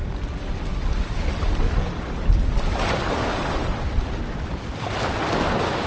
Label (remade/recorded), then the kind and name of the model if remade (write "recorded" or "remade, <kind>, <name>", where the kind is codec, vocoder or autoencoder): recorded